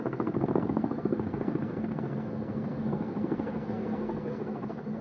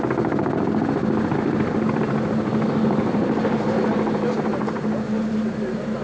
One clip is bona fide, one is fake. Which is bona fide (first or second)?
second